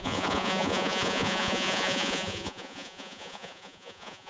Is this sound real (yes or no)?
no